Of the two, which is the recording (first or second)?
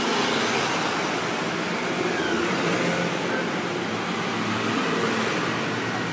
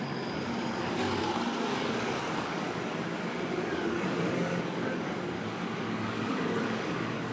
first